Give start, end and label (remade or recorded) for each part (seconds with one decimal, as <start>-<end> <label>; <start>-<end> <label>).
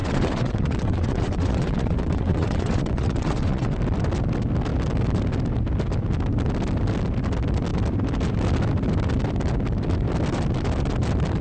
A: 0.0-3.8 remade; 3.8-11.4 recorded